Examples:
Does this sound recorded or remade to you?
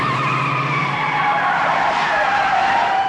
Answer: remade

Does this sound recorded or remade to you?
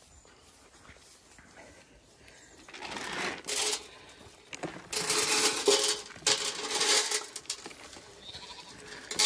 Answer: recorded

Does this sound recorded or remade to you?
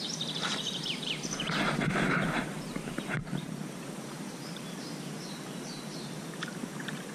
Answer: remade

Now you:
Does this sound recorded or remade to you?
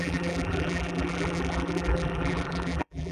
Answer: remade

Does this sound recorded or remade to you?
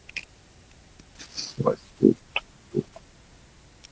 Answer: recorded